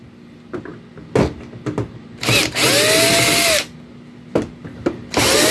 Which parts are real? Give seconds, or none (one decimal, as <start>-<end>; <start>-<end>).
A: 0.0-5.5